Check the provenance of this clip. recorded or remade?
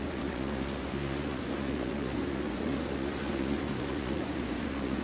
remade